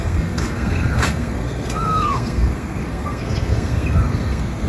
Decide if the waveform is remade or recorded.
remade